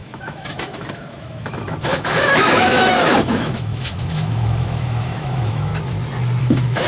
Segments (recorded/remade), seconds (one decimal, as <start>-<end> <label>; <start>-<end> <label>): 0.0-5.7 remade; 5.7-6.4 recorded; 6.4-6.9 remade